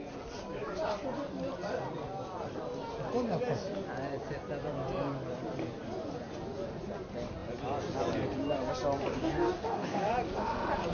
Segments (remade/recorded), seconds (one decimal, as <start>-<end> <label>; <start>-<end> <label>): 0.0-9.1 recorded; 9.1-10.1 remade; 10.1-10.9 recorded

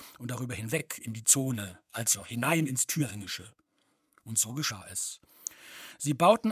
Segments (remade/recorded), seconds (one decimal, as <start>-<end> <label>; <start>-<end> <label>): 0.0-0.8 recorded; 0.8-4.7 remade; 4.7-6.5 recorded

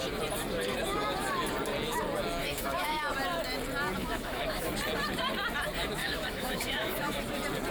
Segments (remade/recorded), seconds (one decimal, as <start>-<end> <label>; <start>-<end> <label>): 0.0-2.4 recorded; 2.4-3.1 remade; 3.1-4.0 recorded; 4.0-4.7 remade; 4.7-6.0 recorded; 6.0-7.2 remade; 7.2-7.7 recorded

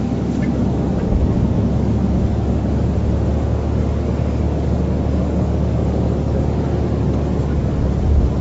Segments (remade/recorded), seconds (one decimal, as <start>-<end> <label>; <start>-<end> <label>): 0.0-2.2 remade; 2.2-3.8 recorded; 3.8-7.9 remade; 7.9-8.4 recorded

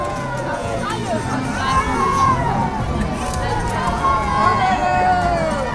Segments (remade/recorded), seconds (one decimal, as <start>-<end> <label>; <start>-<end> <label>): 0.0-1.0 remade; 1.0-2.0 recorded; 2.0-2.6 remade; 2.6-3.7 recorded; 3.7-4.9 remade; 4.9-5.7 recorded

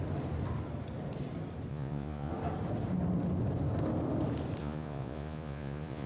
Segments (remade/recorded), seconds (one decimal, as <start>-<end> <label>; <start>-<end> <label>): 0.0-1.7 recorded; 1.7-2.3 remade; 2.3-4.6 recorded; 4.6-6.1 remade

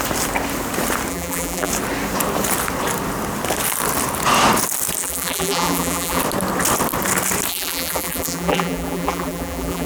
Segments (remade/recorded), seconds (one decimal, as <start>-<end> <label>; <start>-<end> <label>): 0.0-1.1 recorded; 1.1-1.7 remade; 1.7-5.0 recorded; 5.0-6.2 remade; 6.2-7.5 recorded; 7.5-9.9 remade